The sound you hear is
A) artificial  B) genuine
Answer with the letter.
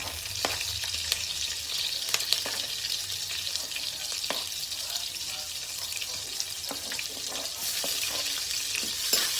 B